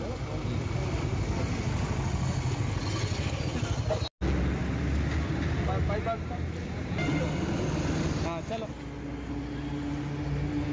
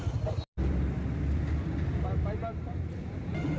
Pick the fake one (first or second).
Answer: second